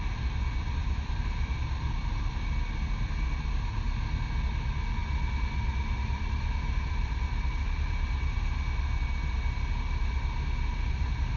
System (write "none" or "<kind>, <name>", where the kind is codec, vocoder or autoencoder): none